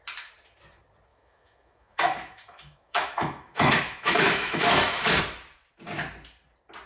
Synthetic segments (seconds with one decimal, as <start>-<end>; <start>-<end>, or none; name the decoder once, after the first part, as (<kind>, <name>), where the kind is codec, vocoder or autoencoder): 1.1-5.2 (autoencoder, DAC-VAE)